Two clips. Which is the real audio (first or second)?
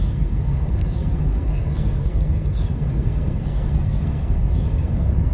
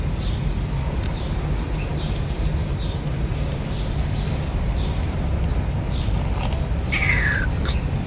second